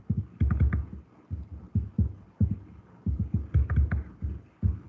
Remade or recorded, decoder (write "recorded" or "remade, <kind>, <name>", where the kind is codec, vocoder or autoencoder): recorded